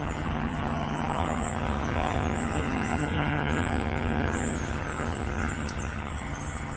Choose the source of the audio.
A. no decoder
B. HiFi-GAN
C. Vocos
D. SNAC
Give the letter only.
B